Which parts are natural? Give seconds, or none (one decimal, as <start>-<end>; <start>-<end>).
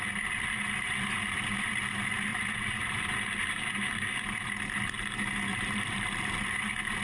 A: 0.0-2.3; 3.0-5.5; 6.6-7.0